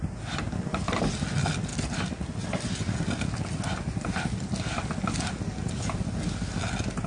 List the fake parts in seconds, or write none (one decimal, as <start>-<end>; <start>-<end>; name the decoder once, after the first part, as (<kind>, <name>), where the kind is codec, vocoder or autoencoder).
none